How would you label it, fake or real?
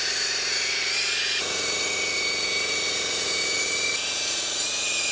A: fake